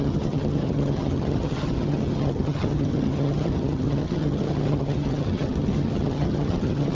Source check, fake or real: fake